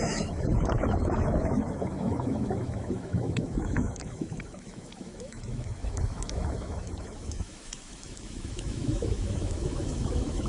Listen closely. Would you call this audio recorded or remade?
remade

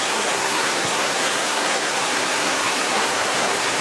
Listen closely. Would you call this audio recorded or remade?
remade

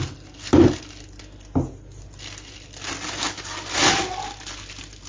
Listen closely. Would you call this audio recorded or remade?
recorded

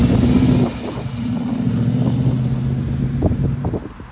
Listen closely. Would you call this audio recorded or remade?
recorded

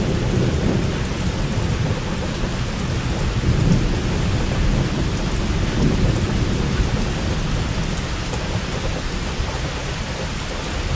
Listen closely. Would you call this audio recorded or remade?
recorded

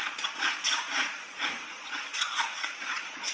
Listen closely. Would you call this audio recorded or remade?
remade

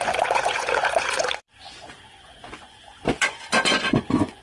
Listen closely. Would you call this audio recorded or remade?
remade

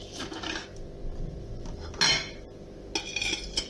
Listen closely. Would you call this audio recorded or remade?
recorded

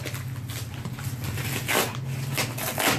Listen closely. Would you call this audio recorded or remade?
recorded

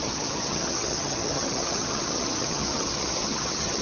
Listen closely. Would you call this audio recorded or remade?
remade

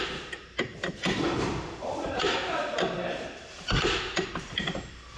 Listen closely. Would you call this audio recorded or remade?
remade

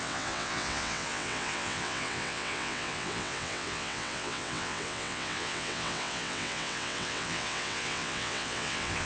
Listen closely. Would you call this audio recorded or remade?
remade